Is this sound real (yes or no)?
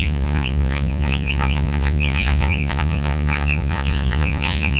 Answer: no